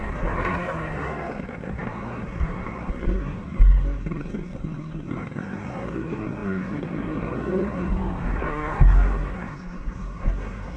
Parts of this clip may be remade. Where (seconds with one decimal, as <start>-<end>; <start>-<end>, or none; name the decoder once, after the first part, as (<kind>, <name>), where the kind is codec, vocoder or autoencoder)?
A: 0.0-10.8 (codec, SNAC)